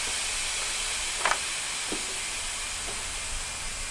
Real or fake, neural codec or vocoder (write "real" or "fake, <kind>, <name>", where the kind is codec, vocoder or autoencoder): real